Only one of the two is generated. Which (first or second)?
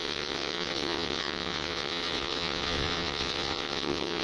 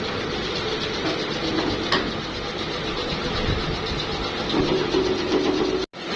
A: first